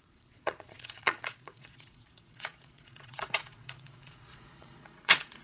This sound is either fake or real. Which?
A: fake